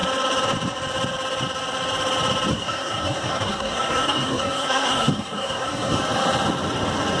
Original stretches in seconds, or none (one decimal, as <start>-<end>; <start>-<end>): 0.0-2.5; 6.0-7.2